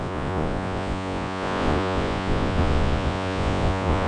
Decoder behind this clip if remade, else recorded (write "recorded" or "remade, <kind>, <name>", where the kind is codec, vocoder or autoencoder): remade, vocoder, Vocos